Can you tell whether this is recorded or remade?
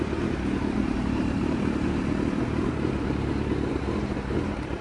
remade